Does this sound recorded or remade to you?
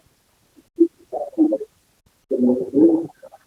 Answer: recorded